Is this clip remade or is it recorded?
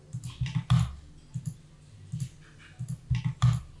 recorded